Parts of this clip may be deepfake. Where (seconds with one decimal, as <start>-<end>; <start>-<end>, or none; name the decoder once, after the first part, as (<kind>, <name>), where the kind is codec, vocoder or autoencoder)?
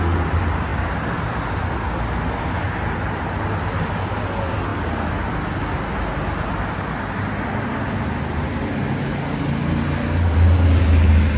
none